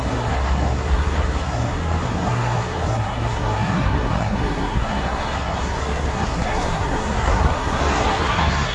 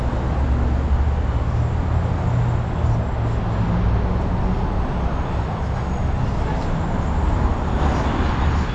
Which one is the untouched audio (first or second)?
second